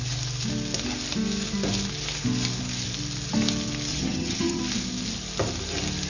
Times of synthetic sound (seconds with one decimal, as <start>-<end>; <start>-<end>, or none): 3.9-4.6